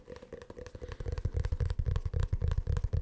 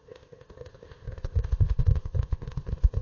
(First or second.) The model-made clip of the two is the second